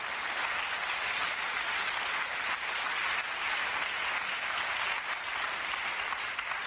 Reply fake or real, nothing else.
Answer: real